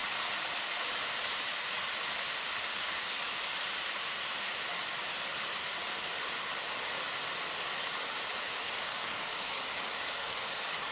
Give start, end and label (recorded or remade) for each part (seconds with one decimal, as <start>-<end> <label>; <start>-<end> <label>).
0.0-8.9 recorded; 8.9-10.9 remade